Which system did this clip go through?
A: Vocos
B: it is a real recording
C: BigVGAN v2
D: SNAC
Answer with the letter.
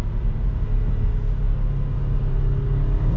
B